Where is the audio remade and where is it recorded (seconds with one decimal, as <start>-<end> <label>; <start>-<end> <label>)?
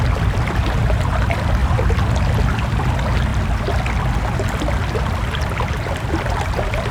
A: 0.0-6.9 recorded